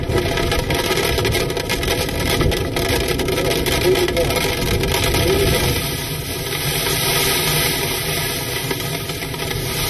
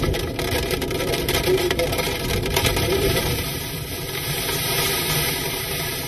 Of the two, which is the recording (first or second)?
first